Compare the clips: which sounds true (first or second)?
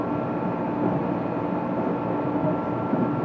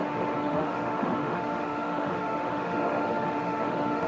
first